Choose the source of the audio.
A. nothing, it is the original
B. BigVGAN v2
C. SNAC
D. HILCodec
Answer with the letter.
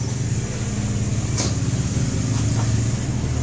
A